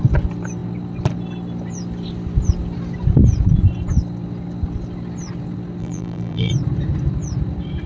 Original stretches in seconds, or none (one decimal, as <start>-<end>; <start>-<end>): 0.0-5.8; 6.5-7.9